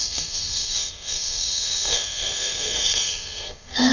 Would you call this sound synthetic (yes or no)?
yes